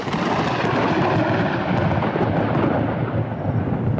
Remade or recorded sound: recorded